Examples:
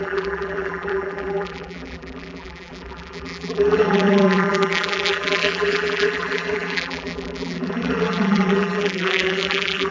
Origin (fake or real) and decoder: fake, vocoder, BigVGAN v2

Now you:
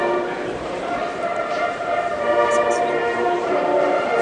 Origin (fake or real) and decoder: fake, vocoder, BigVGAN v2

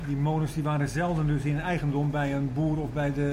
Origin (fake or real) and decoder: real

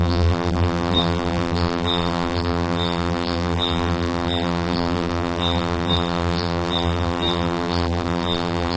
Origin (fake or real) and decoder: fake, vocoder, BigVGAN v2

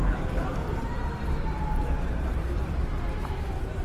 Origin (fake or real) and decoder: fake, vocoder, BigVGAN v2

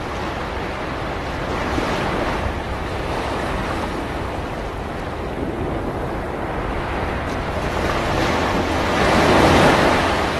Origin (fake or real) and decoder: real